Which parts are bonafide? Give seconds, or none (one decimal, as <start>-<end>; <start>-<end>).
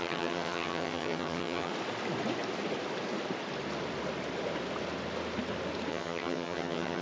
1.7-5.9